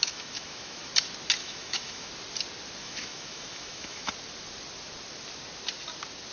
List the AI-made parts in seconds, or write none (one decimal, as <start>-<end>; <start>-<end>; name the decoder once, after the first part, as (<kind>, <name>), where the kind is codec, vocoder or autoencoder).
0.0-0.9 (autoencoder, DAC-VAE); 1.4-2.1; 2.8-4.1